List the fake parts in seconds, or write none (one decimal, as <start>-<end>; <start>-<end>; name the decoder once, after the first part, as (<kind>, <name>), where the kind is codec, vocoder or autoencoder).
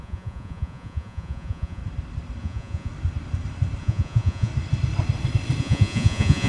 0.0-1.8 (vocoder, Vocos); 2.4-2.9; 3.8-4.5; 5.6-6.5